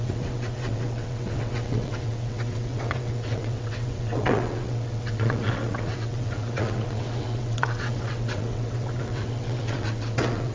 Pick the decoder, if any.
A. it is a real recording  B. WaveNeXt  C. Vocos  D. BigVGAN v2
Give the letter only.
B